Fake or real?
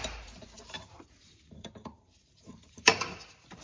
fake